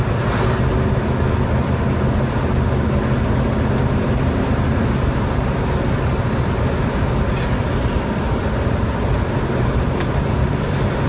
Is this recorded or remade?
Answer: recorded